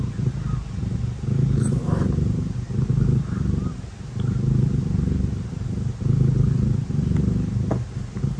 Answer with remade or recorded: recorded